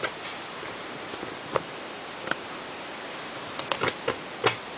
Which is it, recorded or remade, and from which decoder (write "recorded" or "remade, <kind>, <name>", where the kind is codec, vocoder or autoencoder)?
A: remade, vocoder, BigVGAN v2